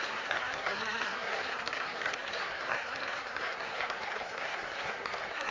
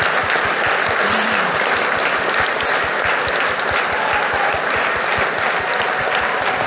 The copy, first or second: first